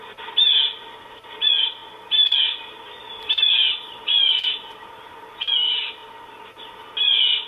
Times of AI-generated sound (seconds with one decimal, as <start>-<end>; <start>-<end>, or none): none